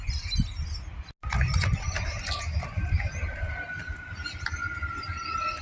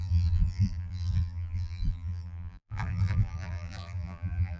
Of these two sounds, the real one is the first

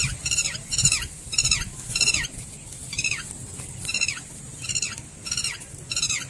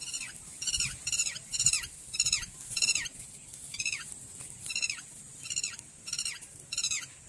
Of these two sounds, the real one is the second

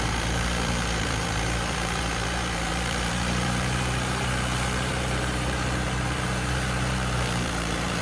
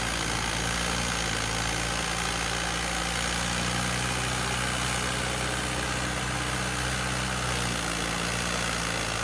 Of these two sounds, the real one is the second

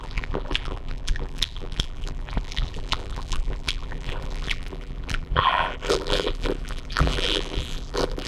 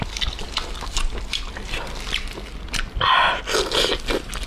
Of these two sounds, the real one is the second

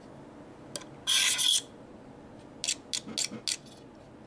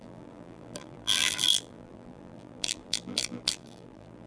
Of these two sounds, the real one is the first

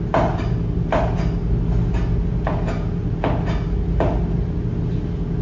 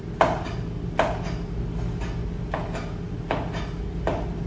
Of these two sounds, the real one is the first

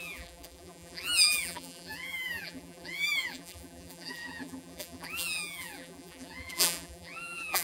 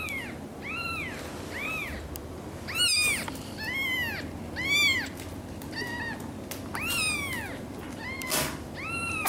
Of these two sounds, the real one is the second